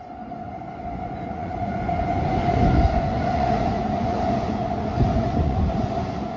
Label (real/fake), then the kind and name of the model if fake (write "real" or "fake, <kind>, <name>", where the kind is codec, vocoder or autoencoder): fake, vocoder, Vocos